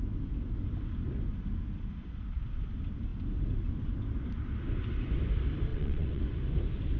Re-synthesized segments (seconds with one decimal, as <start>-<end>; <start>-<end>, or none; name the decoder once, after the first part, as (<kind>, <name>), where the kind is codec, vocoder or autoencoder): 5.7-6.2 (vocoder, WaveNeXt)